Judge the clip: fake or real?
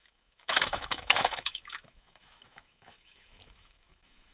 fake